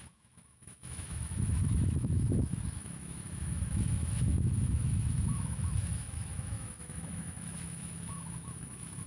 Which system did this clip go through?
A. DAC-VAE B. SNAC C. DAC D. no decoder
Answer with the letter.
A